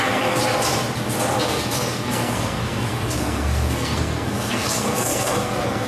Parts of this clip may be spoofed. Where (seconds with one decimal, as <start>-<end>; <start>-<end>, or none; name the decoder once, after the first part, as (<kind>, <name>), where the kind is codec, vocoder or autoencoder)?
0.0-0.4 (codec, SNAC); 1.4-5.9